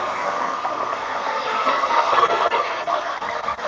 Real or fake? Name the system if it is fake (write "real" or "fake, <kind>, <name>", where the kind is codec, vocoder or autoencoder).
fake, codec, SNAC